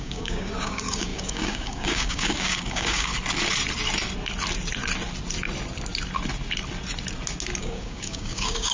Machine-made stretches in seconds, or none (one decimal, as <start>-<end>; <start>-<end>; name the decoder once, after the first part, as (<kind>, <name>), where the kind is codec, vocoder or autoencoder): 0.0-3.1 (codec, DAC); 7.6-8.7